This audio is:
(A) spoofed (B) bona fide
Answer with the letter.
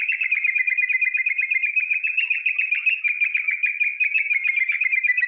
B